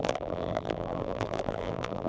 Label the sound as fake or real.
fake